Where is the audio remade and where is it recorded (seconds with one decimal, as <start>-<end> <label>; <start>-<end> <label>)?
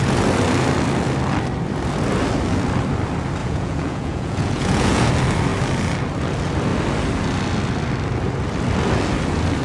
0.0-3.4 recorded; 3.4-5.1 remade; 5.1-9.6 recorded